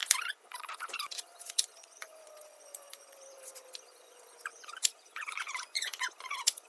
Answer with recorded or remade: remade